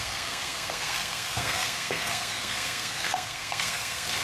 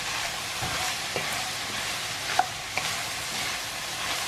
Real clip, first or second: second